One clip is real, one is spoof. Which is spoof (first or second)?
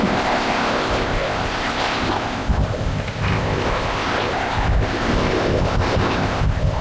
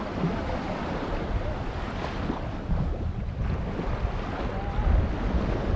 first